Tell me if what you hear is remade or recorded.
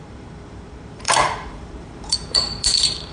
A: remade